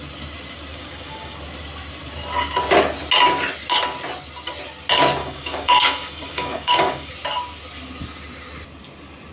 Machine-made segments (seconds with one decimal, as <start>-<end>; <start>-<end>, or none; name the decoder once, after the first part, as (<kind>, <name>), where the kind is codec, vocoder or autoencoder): 0.7-1.4 (codec, DAC); 5.2-7.1